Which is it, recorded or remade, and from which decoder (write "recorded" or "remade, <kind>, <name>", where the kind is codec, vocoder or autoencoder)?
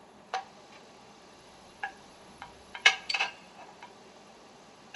remade, vocoder, Vocos